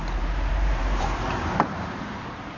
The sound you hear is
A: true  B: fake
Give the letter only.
B